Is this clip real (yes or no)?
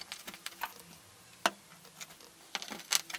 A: yes